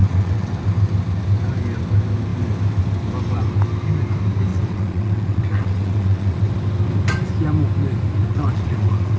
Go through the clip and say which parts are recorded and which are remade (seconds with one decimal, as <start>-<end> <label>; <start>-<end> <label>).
0.0-0.5 remade; 0.5-4.5 recorded; 4.5-6.5 remade; 6.5-8.3 recorded; 8.3-9.2 remade